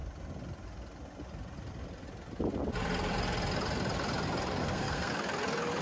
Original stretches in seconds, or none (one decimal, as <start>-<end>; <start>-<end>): 0.0-4.6; 5.1-5.8